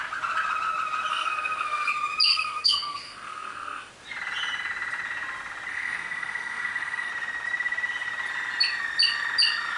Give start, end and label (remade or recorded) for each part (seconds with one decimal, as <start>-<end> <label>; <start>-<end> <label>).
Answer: 0.0-1.1 recorded; 1.1-1.9 remade; 1.9-2.3 recorded; 2.3-3.9 remade; 3.9-5.7 recorded; 5.7-7.1 remade; 7.1-9.8 recorded